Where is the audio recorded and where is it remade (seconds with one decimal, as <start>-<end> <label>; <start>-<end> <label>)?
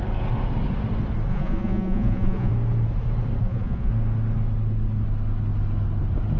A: 0.0-1.3 recorded; 1.3-2.5 remade; 2.5-3.4 recorded; 3.4-3.9 remade; 3.9-6.4 recorded